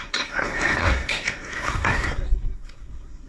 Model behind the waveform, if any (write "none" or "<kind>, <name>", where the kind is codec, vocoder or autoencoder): codec, SNAC